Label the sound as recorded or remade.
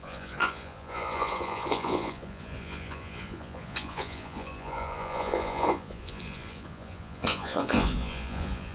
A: remade